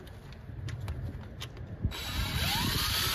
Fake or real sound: real